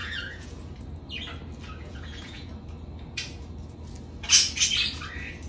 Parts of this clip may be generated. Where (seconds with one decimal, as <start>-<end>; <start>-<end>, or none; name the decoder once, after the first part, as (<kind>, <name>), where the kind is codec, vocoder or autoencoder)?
0.0-0.6 (vocoder, Vocos); 1.8-2.5